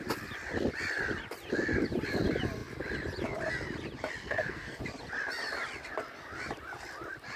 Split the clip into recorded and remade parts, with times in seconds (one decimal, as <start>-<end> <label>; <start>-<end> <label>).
0.0-4.2 recorded; 4.2-4.8 remade; 4.8-7.4 recorded